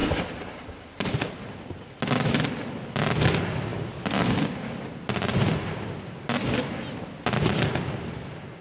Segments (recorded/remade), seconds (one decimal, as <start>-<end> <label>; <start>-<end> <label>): 0.0-8.6 recorded

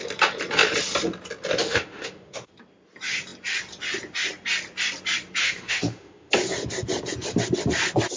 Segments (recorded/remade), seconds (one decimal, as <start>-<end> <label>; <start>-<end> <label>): 0.0-1.6 recorded; 1.6-2.5 remade; 2.5-5.4 recorded; 5.4-6.3 remade; 6.3-8.2 recorded